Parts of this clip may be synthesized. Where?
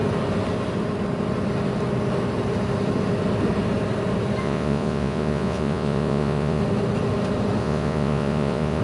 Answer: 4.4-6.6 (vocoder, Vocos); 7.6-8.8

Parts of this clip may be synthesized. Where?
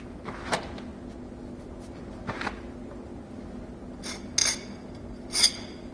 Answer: none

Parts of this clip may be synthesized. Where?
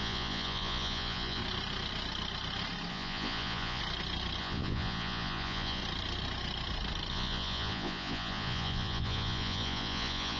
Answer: 0.0-1.4 (vocoder, Vocos); 2.9-3.8; 4.4-5.8; 7.1-10.4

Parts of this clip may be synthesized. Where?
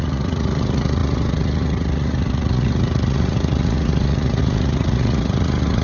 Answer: 0.0-5.8 (vocoder, Vocos)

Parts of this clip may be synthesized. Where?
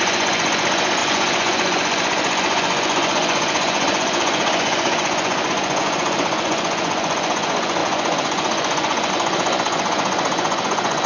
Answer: 0.0-11.1 (vocoder, Vocos)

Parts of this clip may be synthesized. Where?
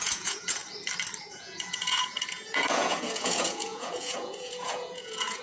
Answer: 0.0-0.6 (vocoder, Vocos); 1.2-5.4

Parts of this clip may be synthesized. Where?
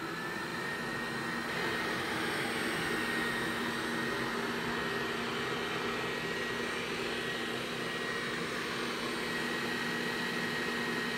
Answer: none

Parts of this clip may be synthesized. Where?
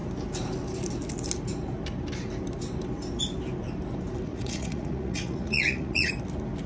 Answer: 4.3-6.1 (vocoder, Vocos)